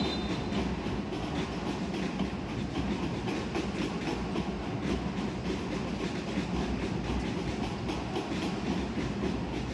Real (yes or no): yes